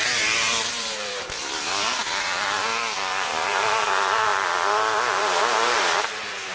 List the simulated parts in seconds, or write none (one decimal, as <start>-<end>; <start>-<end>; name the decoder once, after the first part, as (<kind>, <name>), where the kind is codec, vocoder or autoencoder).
0.0-6.5 (vocoder, BigVGAN v2)